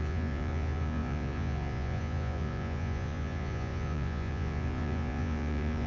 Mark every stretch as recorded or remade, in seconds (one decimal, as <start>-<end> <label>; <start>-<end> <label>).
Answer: 0.0-5.9 remade